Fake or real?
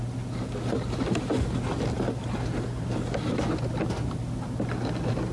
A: real